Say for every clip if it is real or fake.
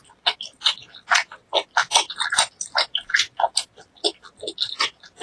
real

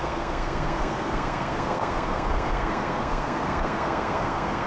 fake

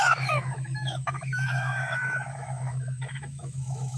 fake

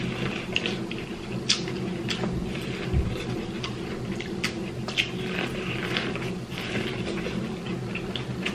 real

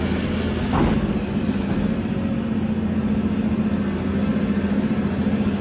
real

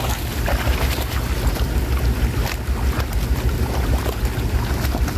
real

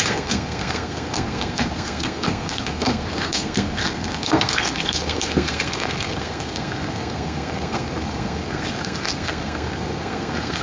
fake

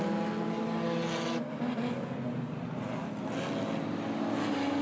real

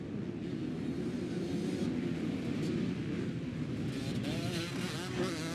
real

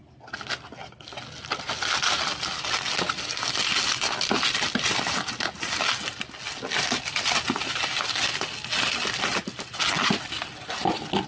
real